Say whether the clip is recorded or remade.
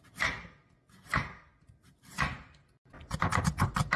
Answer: recorded